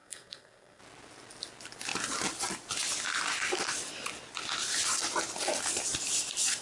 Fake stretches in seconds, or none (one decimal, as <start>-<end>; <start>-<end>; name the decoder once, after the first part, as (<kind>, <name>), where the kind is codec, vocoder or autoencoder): 0.0-0.8 (codec, SNAC)